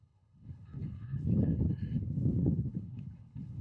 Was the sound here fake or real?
fake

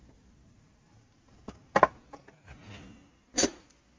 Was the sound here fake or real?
real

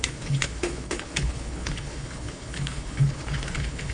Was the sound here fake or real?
fake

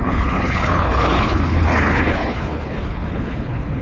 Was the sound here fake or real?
fake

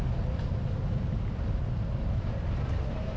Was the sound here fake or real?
real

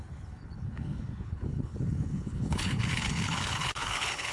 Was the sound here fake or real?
fake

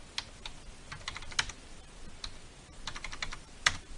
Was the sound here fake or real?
real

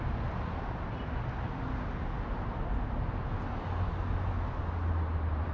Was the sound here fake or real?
real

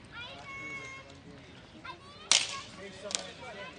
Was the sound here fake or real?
real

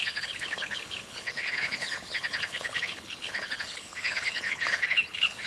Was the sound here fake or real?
fake